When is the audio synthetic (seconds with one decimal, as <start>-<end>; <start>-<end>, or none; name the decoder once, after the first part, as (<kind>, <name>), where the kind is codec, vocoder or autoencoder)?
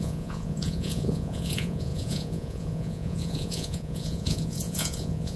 0.0-5.4 (vocoder, Vocos)